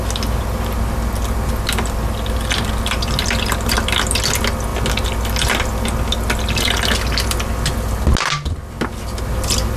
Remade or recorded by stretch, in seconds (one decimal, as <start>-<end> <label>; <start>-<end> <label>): 0.0-9.8 recorded